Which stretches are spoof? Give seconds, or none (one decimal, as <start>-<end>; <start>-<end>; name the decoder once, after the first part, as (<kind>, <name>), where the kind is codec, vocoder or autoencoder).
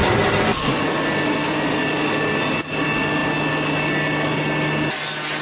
none